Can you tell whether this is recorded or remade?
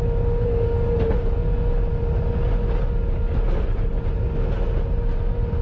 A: recorded